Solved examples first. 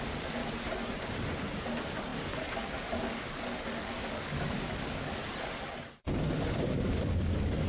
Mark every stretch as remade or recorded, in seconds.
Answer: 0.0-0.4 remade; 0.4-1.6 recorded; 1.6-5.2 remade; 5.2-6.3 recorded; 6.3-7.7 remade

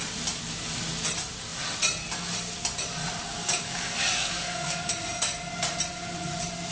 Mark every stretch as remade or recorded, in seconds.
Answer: 0.0-3.2 recorded; 3.2-4.9 remade; 4.9-6.7 recorded